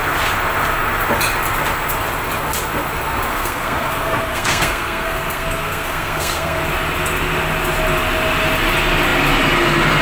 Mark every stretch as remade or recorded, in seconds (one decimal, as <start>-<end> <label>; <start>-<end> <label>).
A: 0.0-3.3 recorded; 3.3-6.6 remade; 6.6-10.0 recorded